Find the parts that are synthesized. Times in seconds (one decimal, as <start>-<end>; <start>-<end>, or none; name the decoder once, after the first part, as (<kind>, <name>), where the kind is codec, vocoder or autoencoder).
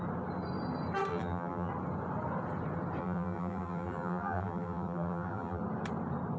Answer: 1.1-1.7 (vocoder, BigVGAN v2); 3.0-5.6